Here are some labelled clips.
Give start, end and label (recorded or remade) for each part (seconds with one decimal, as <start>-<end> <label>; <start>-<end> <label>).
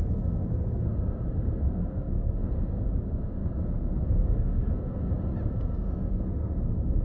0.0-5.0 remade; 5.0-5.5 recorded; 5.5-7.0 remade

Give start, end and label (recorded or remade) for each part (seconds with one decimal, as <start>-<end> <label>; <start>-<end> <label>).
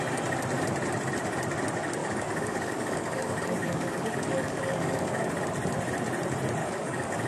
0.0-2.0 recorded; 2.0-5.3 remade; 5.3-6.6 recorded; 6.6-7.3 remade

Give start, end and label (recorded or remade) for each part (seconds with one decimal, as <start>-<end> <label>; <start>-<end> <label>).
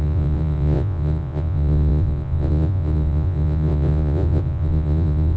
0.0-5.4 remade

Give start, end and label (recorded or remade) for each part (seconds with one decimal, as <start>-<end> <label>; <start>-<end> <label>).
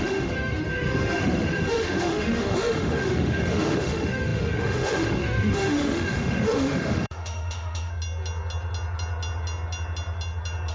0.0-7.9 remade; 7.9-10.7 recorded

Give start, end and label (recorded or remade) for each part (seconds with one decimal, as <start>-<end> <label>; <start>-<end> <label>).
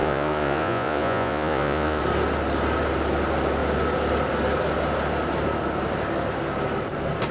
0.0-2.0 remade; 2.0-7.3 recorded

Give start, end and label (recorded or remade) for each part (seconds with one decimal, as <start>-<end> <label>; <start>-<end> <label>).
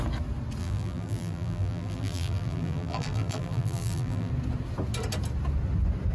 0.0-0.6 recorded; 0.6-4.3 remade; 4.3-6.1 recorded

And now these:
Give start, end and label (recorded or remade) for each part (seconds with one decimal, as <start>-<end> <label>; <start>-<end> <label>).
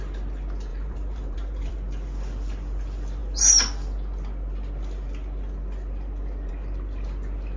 0.0-0.7 recorded; 0.7-1.7 remade; 1.7-7.6 recorded